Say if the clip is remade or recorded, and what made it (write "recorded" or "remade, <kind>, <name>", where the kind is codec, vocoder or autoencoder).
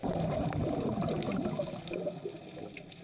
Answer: recorded